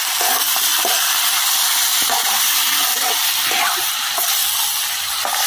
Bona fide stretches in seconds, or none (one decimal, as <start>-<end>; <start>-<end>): 0.0-5.5